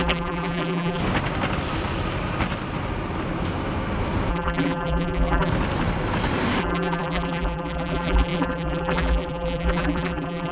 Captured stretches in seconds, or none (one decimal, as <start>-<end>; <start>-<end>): 1.0-4.3; 5.5-6.6